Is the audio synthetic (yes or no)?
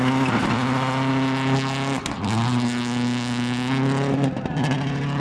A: no